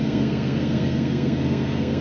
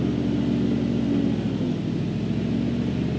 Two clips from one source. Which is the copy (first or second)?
first